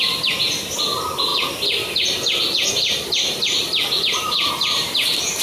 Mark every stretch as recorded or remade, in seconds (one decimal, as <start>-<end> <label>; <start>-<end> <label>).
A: 0.0-5.4 recorded